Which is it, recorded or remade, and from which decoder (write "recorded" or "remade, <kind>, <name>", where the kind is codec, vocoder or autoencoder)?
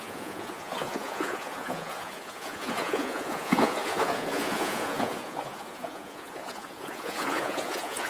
remade, vocoder, Vocos